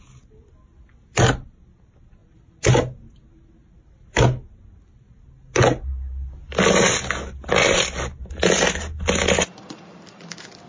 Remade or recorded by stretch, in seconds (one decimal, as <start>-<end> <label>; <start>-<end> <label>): 0.0-10.7 recorded